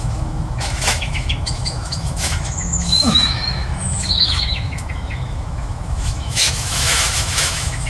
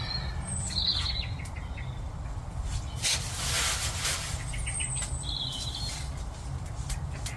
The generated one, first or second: first